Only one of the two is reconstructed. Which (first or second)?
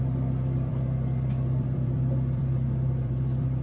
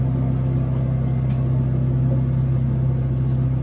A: first